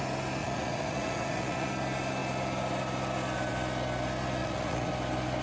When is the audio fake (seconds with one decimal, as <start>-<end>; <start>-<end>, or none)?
0.4-1.7; 4.4-4.9